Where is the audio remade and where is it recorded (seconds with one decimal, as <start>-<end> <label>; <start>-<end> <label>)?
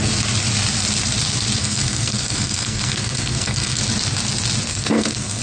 0.0-1.6 recorded; 1.6-3.8 remade; 3.8-4.7 recorded; 4.7-5.4 remade